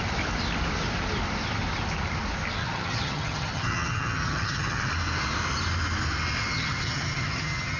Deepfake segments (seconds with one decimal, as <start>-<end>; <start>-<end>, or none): 2.6-4.9; 6.4-7.8